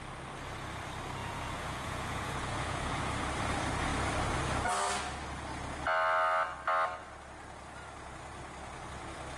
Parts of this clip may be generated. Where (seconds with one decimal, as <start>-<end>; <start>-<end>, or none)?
1.2-3.0